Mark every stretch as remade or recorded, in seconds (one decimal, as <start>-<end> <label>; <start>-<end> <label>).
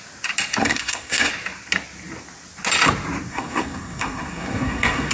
0.0-0.6 recorded; 0.6-1.3 remade; 1.3-3.3 recorded; 3.3-5.1 remade